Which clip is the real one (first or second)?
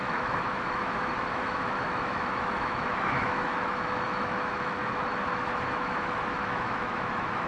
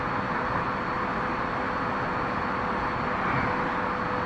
second